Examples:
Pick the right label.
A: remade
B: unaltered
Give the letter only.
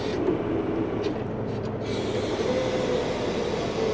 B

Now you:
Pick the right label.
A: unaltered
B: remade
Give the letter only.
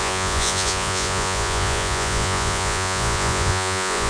B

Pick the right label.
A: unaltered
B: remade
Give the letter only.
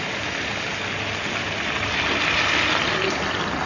A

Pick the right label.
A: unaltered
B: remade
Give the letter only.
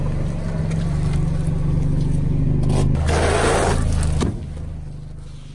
A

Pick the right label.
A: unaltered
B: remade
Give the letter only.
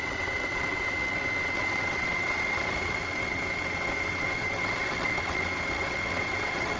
B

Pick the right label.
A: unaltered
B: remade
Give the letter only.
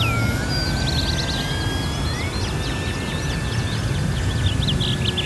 A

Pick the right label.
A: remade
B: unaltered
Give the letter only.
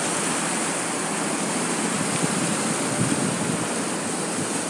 B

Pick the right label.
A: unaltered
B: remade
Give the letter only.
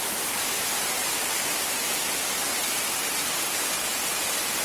A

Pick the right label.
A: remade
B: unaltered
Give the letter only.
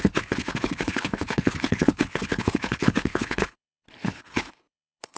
A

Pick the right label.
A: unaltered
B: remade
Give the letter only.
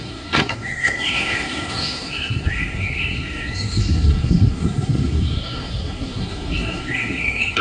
B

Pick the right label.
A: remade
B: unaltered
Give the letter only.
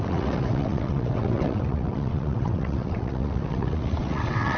A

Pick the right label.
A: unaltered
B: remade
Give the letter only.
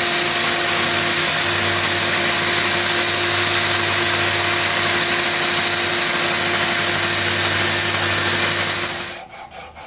A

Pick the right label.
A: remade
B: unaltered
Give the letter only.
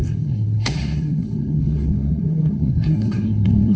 A